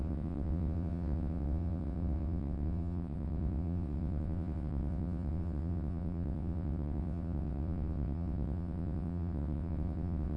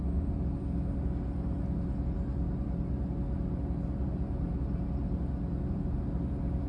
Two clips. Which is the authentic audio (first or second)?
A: second